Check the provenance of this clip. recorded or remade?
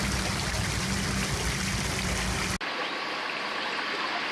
recorded